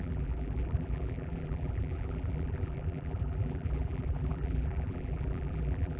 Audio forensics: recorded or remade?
remade